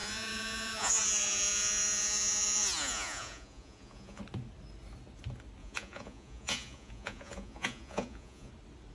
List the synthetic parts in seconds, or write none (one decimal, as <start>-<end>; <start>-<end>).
0.0-4.2; 5.6-8.5